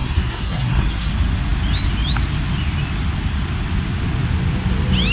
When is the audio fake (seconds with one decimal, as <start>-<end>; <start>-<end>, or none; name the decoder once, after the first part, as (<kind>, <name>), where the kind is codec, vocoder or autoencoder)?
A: 0.0-1.1 (codec, SNAC)